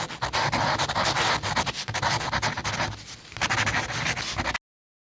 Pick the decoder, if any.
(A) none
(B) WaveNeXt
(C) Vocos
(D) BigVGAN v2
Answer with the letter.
A